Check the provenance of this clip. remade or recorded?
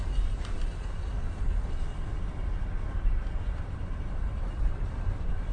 recorded